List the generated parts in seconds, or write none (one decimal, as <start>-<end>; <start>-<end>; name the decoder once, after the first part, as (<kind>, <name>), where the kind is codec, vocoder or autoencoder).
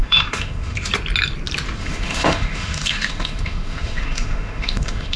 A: 0.0-0.9 (autoencoder, DAC-VAE); 1.8-5.2